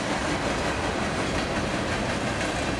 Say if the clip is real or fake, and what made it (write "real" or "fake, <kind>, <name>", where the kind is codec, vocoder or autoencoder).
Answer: real